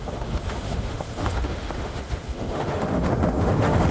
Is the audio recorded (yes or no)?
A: no